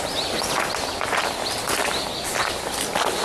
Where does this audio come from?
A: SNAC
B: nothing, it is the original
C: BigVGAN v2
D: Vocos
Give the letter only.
C